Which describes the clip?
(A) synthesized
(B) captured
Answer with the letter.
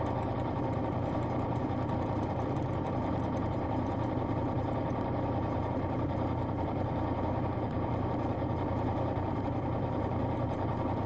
A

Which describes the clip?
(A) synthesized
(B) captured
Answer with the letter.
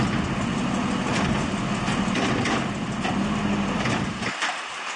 B